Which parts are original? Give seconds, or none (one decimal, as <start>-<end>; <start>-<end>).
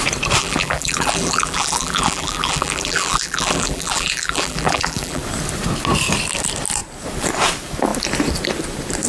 0.0-0.4; 5.2-9.1